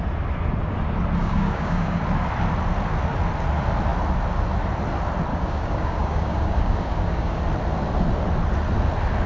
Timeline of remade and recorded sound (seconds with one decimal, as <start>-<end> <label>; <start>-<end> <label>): 0.0-1.2 recorded; 1.2-2.0 remade; 2.0-5.3 recorded; 5.3-7.4 remade; 7.4-9.3 recorded